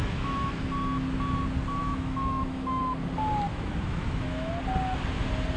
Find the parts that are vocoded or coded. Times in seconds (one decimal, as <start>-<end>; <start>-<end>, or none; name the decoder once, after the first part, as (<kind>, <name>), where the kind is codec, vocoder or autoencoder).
0.0-0.6 (autoencoder, DAC-VAE); 1.8-2.8; 3.5-4.5